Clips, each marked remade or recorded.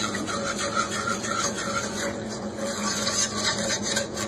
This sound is remade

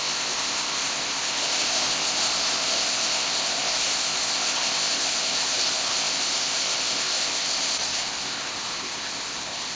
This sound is remade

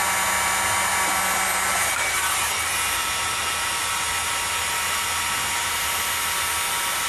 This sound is recorded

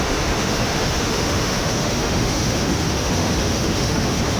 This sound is remade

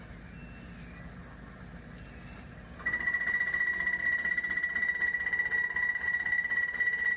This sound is recorded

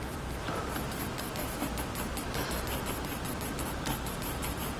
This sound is recorded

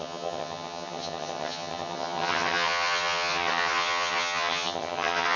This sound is remade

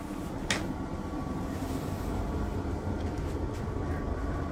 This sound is recorded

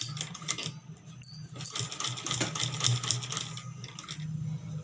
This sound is recorded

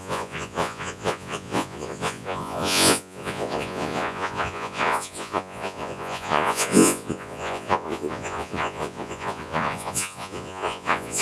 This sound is remade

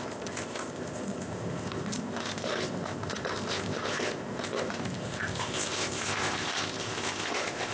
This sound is remade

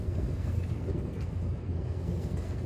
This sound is remade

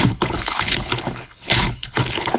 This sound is remade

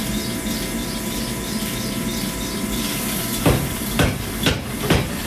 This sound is recorded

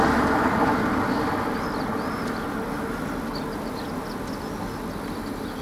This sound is recorded